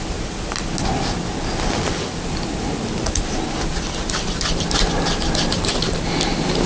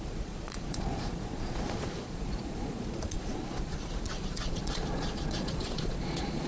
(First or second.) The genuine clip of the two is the first